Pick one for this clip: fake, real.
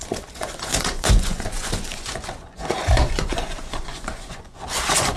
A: fake